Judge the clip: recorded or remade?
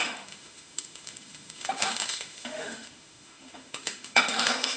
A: remade